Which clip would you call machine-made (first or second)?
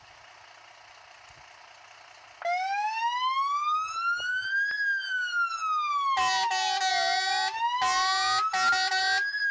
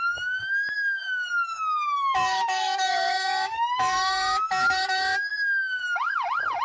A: second